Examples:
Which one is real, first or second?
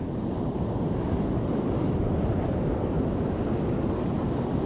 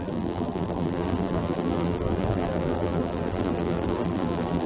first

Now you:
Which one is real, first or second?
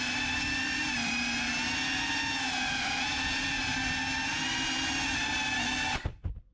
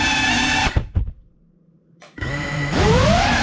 first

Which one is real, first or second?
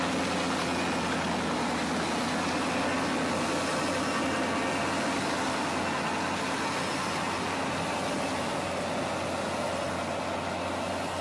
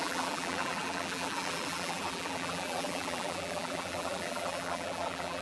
first